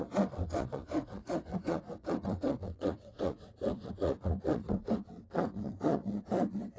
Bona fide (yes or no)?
no